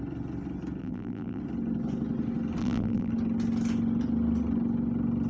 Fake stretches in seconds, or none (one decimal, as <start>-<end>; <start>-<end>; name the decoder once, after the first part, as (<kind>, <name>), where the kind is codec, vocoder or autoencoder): 0.8-1.4 (vocoder, BigVGAN v2); 2.6-3.1